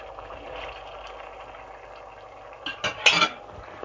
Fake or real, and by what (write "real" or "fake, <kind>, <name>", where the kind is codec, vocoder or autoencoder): real